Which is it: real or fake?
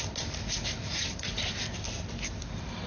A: real